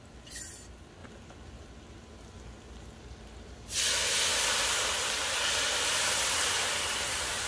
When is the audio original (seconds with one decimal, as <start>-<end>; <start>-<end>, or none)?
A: 0.0-7.5